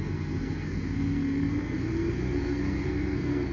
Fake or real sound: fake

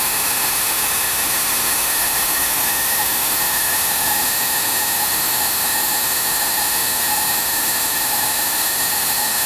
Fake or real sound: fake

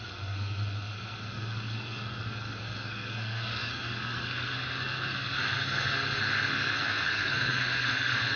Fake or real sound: fake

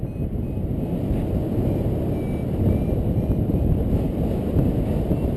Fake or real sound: real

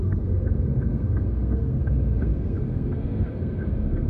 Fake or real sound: fake